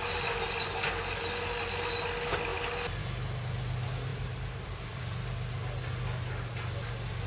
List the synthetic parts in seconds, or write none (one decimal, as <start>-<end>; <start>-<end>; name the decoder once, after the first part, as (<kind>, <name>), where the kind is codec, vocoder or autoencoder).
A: 4.1-5.0 (vocoder, BigVGAN v2)